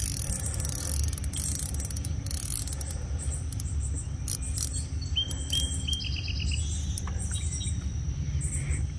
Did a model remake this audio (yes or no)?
no